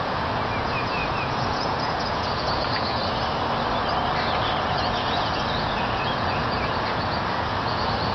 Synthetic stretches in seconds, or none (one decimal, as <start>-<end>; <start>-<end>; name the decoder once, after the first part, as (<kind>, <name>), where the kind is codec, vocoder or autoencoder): 0.0-3.0 (vocoder, Vocos); 4.7-8.1